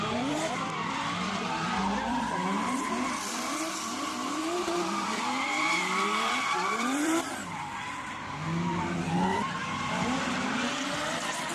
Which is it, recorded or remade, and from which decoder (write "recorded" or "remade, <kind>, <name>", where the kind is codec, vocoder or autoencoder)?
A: remade, vocoder, BigVGAN v2